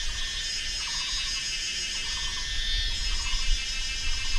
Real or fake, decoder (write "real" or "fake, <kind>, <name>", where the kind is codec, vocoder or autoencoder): real